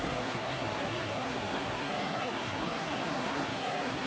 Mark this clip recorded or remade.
remade